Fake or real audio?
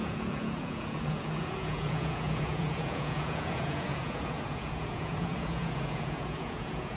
fake